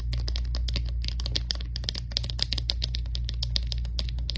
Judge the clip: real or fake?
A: real